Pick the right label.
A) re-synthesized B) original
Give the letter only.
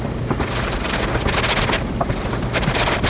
B